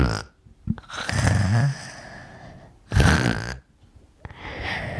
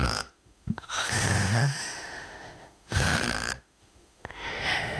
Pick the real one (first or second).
first